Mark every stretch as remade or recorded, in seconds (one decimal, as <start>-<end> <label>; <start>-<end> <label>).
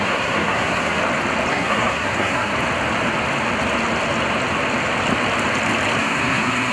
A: 0.0-1.0 remade; 1.0-1.5 recorded; 1.5-2.5 remade; 2.5-6.0 recorded; 6.0-6.7 remade